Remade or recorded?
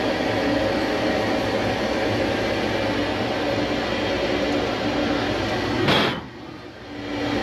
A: recorded